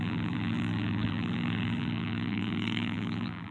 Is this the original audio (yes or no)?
no